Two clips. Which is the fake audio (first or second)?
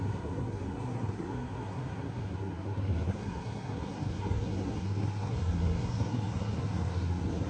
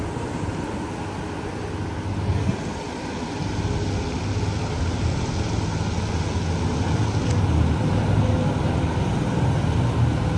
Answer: first